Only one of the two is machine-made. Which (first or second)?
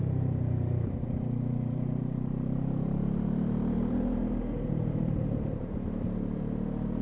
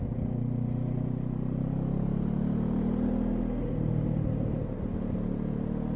first